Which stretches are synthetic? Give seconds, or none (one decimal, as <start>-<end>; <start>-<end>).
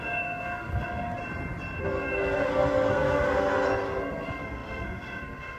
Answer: 0.0-1.2; 1.8-5.6